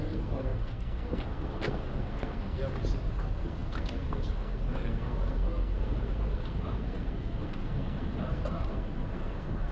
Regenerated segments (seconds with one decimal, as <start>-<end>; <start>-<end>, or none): 0.0-2.6; 3.1-9.7